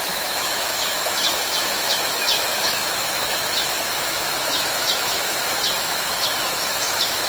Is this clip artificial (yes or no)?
yes